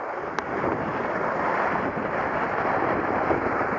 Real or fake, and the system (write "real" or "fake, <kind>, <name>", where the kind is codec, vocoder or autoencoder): real